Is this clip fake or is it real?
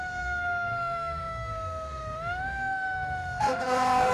fake